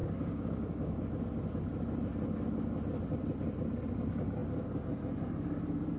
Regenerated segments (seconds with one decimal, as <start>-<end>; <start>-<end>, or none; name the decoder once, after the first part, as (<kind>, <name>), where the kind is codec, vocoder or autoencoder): 0.0-1.0 (codec, DAC)